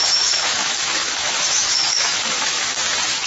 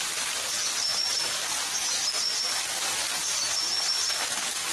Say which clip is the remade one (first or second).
first